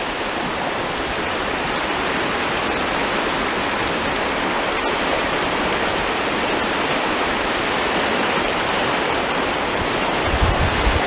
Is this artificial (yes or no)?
no